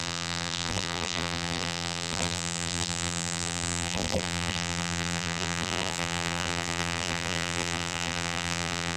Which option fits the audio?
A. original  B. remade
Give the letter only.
B